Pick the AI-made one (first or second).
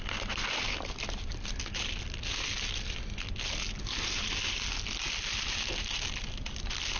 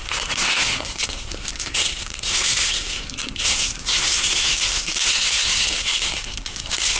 second